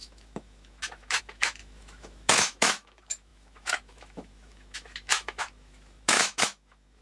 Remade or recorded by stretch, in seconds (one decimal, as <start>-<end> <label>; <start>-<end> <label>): 0.0-7.0 remade